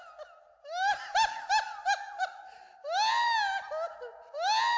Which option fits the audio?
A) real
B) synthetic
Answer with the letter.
A